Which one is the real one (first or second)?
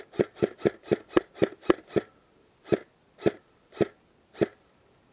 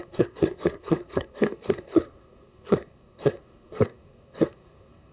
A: first